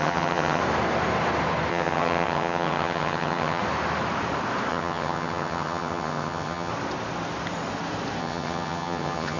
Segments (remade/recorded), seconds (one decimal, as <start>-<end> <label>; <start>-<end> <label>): 0.0-0.6 remade; 0.6-1.7 recorded; 1.7-3.6 remade; 3.6-4.7 recorded; 4.7-6.7 remade; 6.7-8.2 recorded; 8.2-9.4 remade